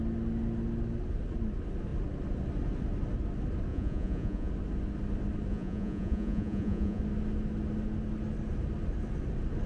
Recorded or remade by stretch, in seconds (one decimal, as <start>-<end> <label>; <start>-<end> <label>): 0.0-3.7 recorded; 3.7-4.5 remade; 4.5-5.5 recorded; 5.5-7.0 remade; 7.0-9.7 recorded